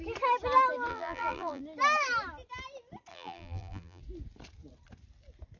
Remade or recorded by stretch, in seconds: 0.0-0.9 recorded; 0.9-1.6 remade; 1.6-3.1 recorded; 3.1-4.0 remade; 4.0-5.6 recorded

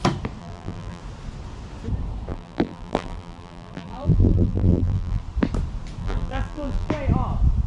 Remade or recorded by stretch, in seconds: 0.0-0.4 recorded; 0.4-1.0 remade; 1.0-2.3 recorded; 2.3-5.2 remade; 5.2-6.0 recorded; 6.0-6.9 remade; 6.9-7.7 recorded

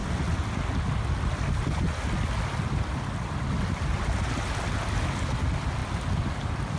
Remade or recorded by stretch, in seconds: 0.0-6.8 recorded

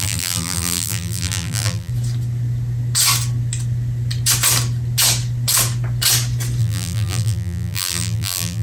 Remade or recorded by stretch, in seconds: 0.0-1.9 remade; 1.9-6.6 recorded; 6.6-8.6 remade

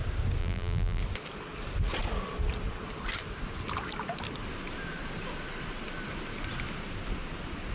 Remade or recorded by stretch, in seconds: 0.0-0.4 recorded; 0.4-1.0 remade; 1.0-7.7 recorded

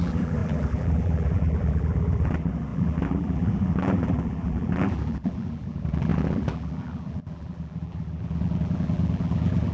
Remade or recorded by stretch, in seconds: 0.0-9.7 remade

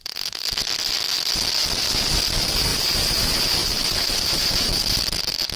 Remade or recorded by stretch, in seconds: 0.0-2.7 recorded; 2.7-3.2 remade; 3.2-3.6 recorded; 3.6-4.8 remade; 4.8-5.6 recorded

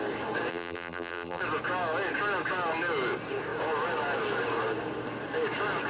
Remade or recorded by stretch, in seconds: 0.0-0.5 recorded; 0.5-1.4 remade; 1.4-5.9 recorded